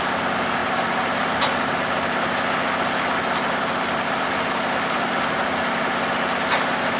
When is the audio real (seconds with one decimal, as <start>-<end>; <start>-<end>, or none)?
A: 0.0-0.6; 1.8-7.0